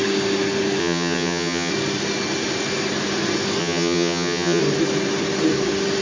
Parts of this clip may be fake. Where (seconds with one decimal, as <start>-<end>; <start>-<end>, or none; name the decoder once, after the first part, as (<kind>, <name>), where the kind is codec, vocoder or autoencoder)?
0.8-1.7 (vocoder, HiFi-GAN); 3.6-4.6